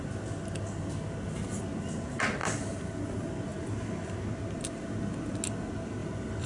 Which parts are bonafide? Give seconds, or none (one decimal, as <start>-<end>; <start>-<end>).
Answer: 0.0-6.0